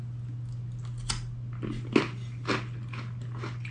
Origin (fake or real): real